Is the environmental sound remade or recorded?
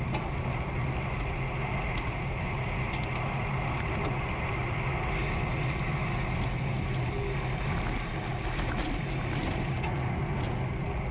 recorded